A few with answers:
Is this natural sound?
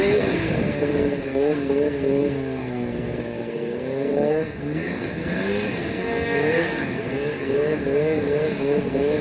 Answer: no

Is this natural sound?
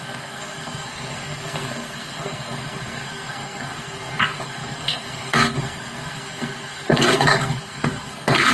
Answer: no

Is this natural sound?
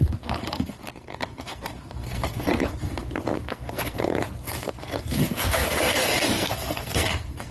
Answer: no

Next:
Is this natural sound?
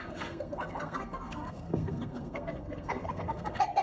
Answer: no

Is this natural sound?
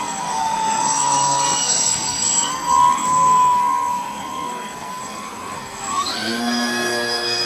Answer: no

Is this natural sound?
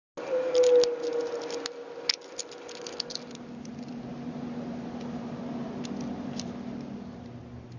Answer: yes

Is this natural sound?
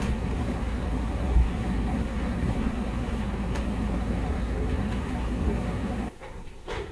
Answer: no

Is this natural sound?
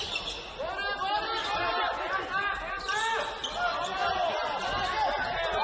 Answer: yes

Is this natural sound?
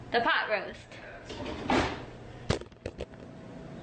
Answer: yes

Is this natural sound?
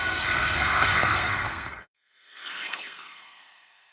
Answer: no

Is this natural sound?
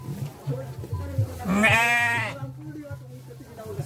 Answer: yes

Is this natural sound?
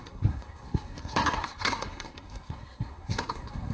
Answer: no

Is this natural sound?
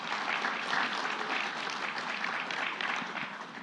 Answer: yes